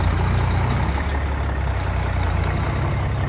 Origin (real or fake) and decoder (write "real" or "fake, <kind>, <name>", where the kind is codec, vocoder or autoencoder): real